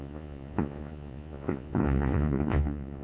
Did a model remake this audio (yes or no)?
yes